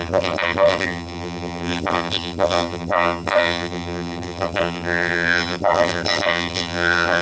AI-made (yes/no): yes